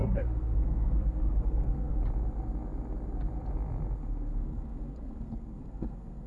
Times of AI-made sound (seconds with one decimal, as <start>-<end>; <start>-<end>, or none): 0.0-2.0; 4.0-6.3